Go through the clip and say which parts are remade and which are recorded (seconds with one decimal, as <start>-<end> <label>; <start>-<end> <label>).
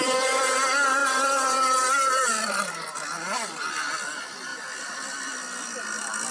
0.0-1.0 recorded; 1.0-2.7 remade; 2.7-4.5 recorded; 4.5-5.2 remade; 5.2-6.3 recorded